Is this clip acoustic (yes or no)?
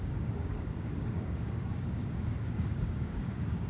no